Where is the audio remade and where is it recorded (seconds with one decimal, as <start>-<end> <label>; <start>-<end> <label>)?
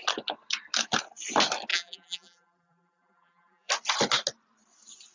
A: 0.0-1.7 recorded; 1.7-3.7 remade; 3.7-5.1 recorded